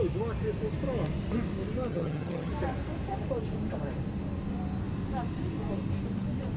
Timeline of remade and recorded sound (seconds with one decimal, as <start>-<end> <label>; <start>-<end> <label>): 0.0-1.9 recorded; 1.9-2.5 remade; 2.5-6.6 recorded